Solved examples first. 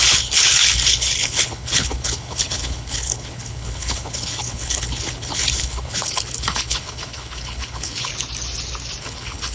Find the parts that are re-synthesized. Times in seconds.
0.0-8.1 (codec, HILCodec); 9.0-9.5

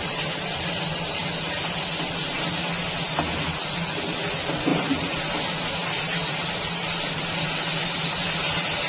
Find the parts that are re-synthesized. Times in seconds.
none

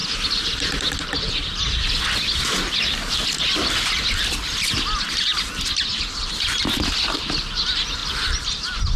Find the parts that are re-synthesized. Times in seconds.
none

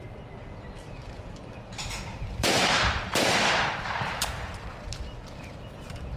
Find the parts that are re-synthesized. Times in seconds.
1.0-4.7 (vocoder, BigVGAN v2)

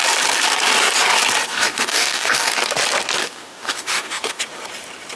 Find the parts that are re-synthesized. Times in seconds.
1.5-2.5 (codec, DAC); 3.2-4.4

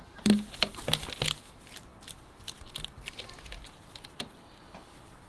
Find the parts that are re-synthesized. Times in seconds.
none

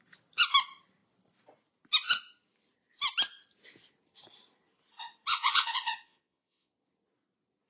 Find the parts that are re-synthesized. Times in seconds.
5.3-6.7 (vocoder, Vocos)